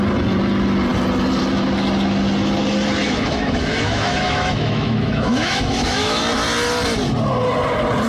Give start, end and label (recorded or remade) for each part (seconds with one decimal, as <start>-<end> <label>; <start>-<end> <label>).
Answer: 0.0-3.0 recorded; 3.0-6.2 remade; 6.2-8.1 recorded